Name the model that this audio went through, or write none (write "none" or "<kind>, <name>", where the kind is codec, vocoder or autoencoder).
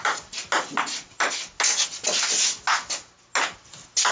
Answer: none